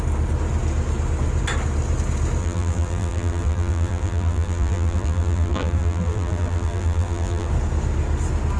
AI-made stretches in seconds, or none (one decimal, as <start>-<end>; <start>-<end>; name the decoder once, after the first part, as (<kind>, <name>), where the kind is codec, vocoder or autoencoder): 2.4-7.5 (vocoder, BigVGAN v2)